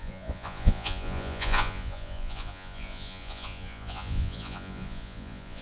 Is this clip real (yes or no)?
no